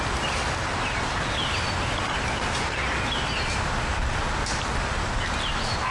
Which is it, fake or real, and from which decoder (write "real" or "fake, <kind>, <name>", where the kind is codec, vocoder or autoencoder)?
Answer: real